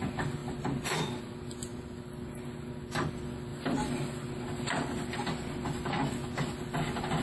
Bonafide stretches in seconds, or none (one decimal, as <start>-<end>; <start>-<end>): 0.0-1.7; 2.4-3.5; 6.0-7.2